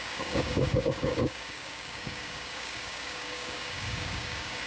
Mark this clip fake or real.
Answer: fake